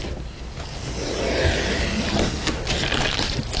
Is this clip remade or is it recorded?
recorded